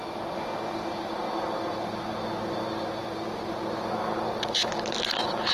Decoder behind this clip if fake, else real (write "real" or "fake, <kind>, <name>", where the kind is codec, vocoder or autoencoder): real